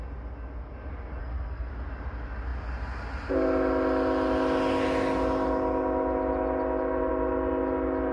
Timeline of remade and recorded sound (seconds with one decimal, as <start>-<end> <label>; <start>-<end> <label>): 0.0-1.2 recorded; 1.2-1.7 remade; 1.7-8.1 recorded